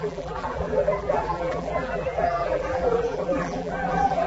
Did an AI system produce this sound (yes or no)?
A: yes